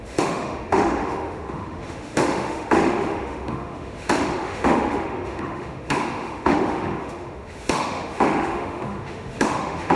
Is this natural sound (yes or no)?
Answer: no